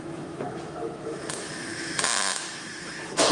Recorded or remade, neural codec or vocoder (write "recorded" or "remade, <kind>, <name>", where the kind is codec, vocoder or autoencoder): remade, autoencoder, DAC-VAE